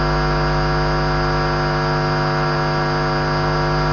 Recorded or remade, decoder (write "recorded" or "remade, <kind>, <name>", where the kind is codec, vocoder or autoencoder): recorded